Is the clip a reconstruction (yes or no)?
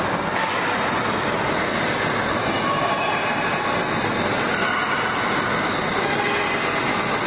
no